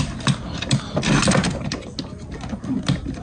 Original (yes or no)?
yes